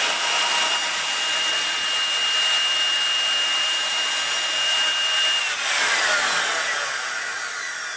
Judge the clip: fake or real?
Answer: real